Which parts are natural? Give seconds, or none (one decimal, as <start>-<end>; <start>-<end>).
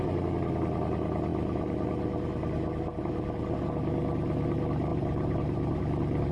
0.0-4.9; 5.8-6.3